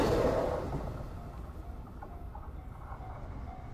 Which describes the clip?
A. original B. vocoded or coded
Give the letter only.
A